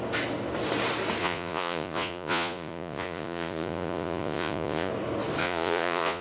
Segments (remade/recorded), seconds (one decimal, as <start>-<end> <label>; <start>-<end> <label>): 0.0-1.2 recorded; 1.2-4.9 remade; 4.9-5.4 recorded; 5.4-6.2 remade